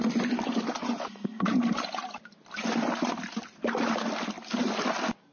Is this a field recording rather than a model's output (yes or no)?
yes